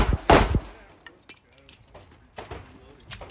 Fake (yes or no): no